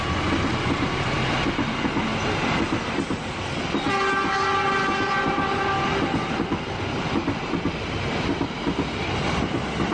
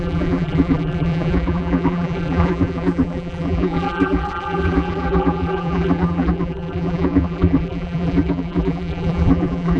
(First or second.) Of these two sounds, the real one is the first